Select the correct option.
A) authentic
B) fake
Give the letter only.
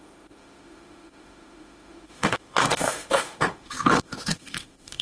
B